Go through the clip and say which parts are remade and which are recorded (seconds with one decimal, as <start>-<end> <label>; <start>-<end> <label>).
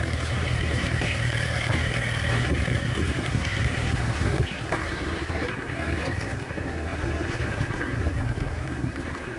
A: 0.0-9.4 remade